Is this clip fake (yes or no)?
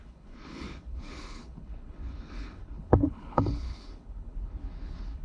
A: yes